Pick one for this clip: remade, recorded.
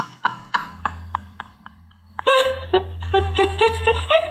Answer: remade